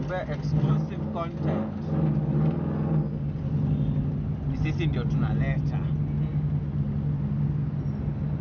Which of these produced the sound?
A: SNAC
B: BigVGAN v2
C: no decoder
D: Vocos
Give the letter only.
C